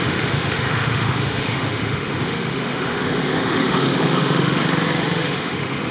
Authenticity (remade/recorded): remade